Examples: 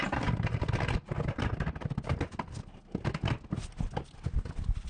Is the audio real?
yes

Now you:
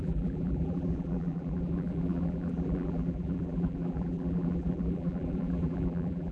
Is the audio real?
no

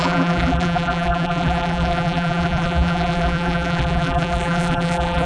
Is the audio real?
no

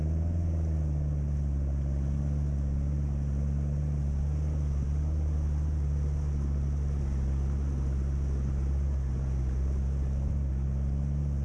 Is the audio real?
yes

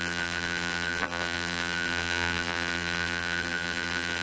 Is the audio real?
no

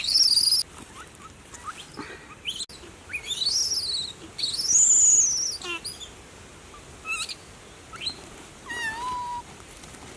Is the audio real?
yes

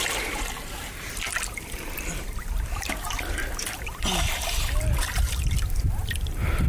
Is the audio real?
no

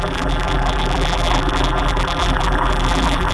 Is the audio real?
no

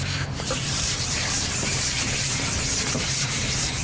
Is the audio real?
no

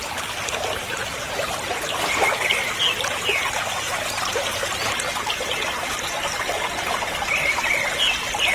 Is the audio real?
yes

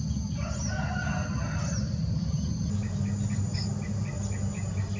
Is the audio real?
yes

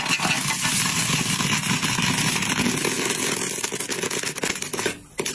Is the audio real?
yes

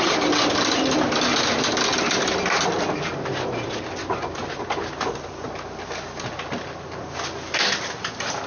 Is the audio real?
yes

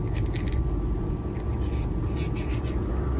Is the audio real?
yes